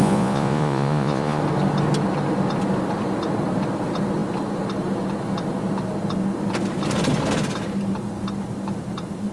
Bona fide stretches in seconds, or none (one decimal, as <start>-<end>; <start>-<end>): 1.4-9.3